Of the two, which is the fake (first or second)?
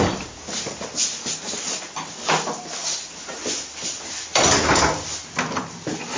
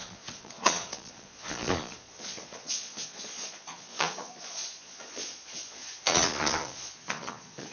second